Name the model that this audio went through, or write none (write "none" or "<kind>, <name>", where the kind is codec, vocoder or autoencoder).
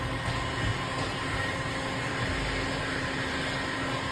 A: none